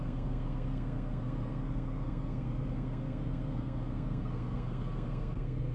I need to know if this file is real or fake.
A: fake